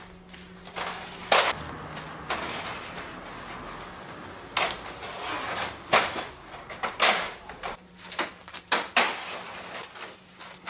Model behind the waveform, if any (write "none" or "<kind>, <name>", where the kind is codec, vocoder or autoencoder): none